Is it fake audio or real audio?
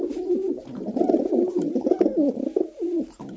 real